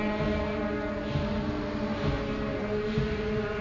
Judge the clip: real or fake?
real